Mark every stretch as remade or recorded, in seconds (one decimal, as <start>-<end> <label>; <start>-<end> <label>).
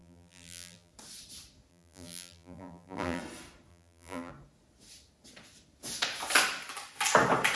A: 0.0-0.9 remade; 0.9-1.7 recorded; 1.7-3.2 remade; 3.2-3.7 recorded; 3.7-4.3 remade; 4.3-7.6 recorded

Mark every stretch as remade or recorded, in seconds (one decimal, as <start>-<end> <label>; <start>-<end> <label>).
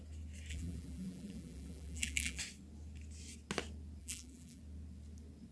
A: 0.0-0.5 recorded; 0.5-2.4 remade; 2.4-4.0 recorded; 4.0-4.6 remade; 4.6-5.5 recorded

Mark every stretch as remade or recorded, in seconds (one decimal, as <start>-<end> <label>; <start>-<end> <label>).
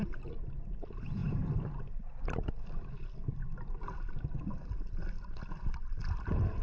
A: 0.0-6.6 recorded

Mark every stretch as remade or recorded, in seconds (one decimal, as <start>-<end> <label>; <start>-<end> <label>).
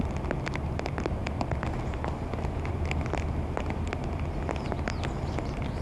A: 0.0-5.8 recorded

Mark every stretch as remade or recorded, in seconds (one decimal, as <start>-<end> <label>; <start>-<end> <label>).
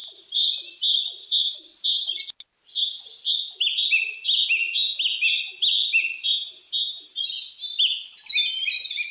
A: 0.0-2.2 remade; 2.2-9.1 recorded